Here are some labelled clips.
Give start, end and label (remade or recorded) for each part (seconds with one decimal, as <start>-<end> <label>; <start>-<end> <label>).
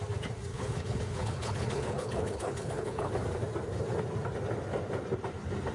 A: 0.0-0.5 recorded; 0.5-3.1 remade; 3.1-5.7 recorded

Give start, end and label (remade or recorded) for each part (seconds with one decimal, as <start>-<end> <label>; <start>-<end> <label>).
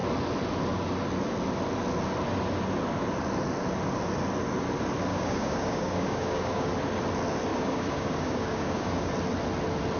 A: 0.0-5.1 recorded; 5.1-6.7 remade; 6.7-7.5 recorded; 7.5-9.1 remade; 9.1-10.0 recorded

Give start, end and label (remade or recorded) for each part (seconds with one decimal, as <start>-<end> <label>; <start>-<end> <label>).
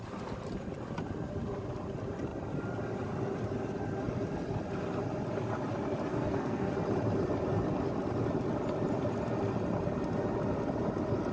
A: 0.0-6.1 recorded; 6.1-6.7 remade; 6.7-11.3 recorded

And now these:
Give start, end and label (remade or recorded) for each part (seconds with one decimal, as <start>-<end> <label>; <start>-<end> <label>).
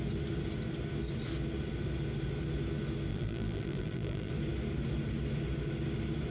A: 0.0-3.1 recorded; 3.1-4.3 remade; 4.3-6.3 recorded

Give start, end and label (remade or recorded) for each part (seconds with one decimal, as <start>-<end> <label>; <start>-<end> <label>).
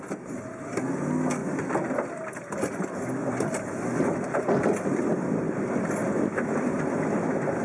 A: 0.0-1.4 recorded; 1.4-2.6 remade; 2.6-3.2 recorded; 3.2-6.2 remade; 6.2-7.6 recorded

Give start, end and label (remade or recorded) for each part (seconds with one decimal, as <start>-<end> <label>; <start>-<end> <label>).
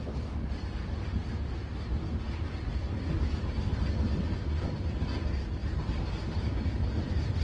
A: 0.0-2.7 recorded; 2.7-3.7 remade; 3.7-7.4 recorded